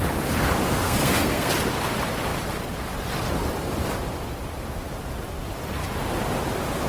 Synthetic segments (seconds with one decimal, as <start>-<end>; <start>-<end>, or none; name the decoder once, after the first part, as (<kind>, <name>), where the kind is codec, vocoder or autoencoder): 0.8-1.5 (codec, SNAC)